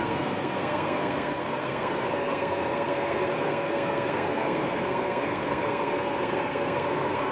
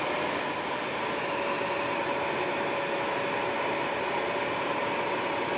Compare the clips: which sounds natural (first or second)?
second